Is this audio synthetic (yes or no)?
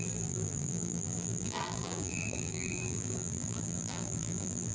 yes